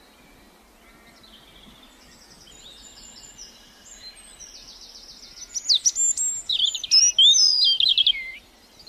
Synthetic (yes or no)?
no